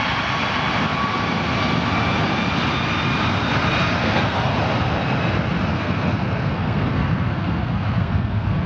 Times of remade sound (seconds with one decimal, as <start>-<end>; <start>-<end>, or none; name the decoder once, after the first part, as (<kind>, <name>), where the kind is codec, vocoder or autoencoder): 4.0-4.5 (codec, SNAC); 5.7-8.7